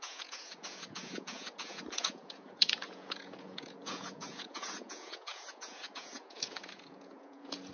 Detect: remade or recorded remade